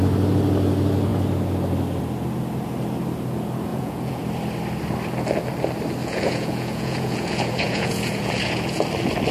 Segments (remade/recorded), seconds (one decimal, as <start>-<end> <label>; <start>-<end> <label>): 0.0-3.7 recorded; 3.7-4.2 remade; 4.2-6.0 recorded; 6.0-8.8 remade; 8.8-9.3 recorded